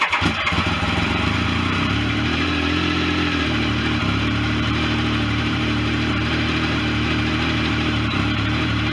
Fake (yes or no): yes